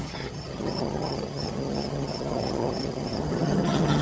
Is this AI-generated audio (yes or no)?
yes